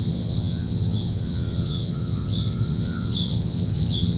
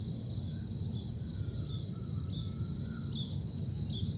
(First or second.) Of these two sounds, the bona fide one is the second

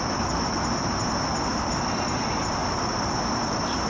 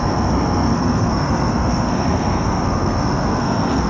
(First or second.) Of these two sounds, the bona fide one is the first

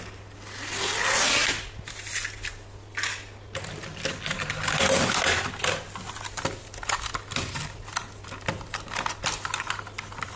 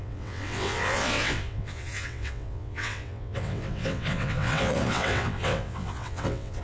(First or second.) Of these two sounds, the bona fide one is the first